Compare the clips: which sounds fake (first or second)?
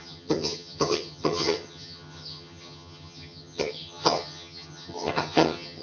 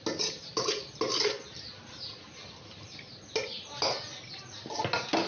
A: first